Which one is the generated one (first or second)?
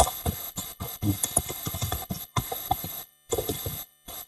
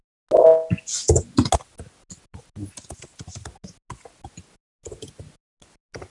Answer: first